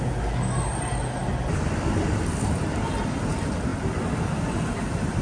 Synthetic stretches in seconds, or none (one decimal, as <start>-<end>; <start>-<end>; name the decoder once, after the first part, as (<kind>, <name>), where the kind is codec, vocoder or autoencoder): none